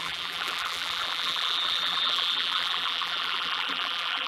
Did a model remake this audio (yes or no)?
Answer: yes